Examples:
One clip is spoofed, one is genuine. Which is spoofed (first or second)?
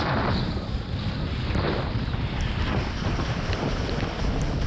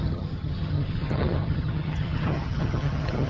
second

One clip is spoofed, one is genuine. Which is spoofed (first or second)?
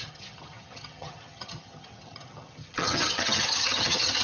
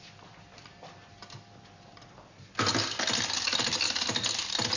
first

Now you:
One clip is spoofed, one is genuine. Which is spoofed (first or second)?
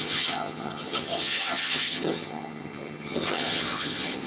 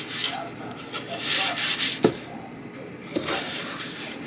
first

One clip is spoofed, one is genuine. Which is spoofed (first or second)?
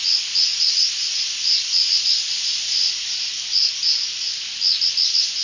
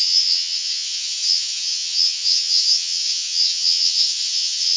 second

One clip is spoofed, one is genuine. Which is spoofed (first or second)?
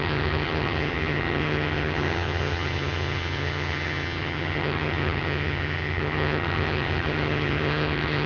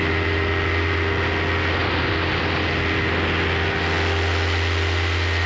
first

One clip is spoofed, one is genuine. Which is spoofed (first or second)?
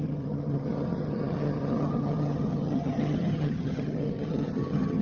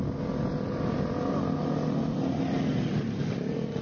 first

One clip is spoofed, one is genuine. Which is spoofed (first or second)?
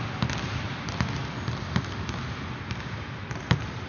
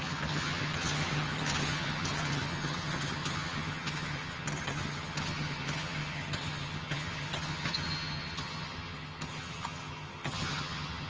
second